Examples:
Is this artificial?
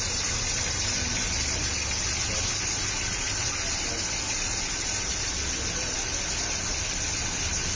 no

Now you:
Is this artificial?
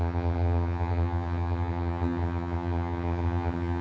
yes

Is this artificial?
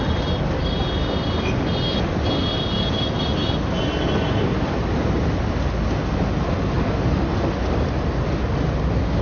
no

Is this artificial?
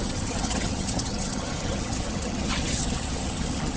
yes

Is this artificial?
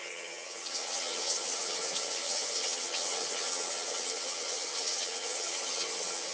yes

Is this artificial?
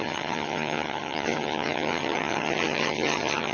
yes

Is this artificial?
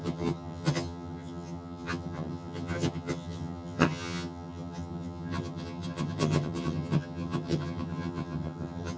yes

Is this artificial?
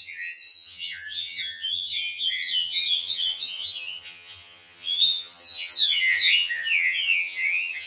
yes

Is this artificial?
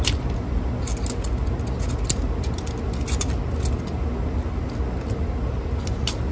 no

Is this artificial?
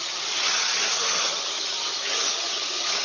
yes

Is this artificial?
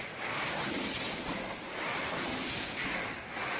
no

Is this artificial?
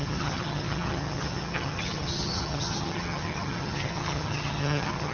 yes